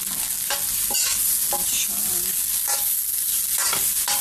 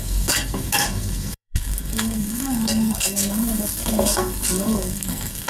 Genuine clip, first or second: first